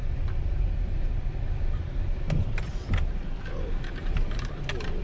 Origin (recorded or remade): recorded